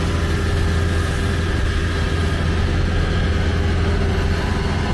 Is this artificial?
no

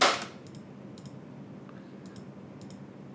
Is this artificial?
no